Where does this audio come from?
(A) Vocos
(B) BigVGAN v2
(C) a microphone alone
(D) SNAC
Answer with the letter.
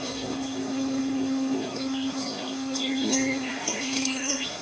D